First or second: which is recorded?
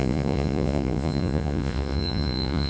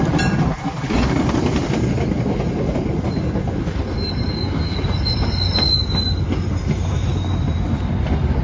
second